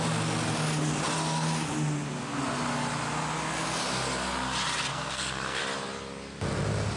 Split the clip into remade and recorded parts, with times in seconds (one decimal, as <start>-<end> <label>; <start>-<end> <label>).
0.0-4.9 recorded; 4.9-5.6 remade; 5.6-7.0 recorded